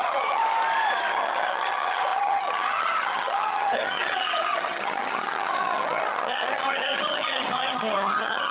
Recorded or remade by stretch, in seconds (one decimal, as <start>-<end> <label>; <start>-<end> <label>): 0.0-0.4 remade; 0.4-1.1 recorded; 1.1-8.5 remade

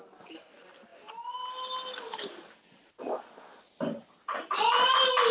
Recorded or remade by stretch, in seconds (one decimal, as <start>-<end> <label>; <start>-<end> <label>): 0.0-5.3 recorded

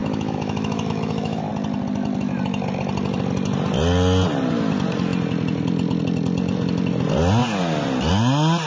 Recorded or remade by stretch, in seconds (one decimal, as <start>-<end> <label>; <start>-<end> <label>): 0.0-1.5 remade; 1.5-8.7 recorded

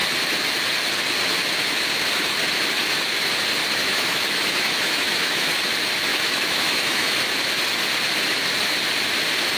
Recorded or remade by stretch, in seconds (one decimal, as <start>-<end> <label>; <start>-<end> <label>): 0.0-3.8 recorded; 3.8-5.6 remade; 5.6-6.1 recorded; 6.1-7.2 remade; 7.2-9.6 recorded

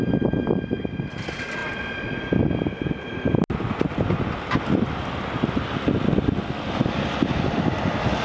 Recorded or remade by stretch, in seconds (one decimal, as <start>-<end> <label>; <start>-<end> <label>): 0.0-8.2 recorded

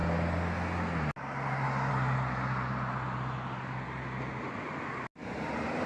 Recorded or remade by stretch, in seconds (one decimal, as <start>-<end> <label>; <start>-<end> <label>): 0.0-5.2 recorded; 5.2-5.9 remade

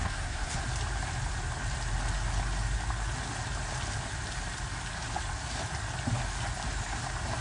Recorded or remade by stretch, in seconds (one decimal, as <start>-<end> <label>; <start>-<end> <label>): 0.0-0.6 remade; 0.6-7.4 recorded